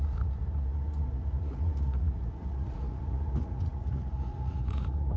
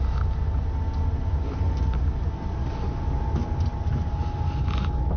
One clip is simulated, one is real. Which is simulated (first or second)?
first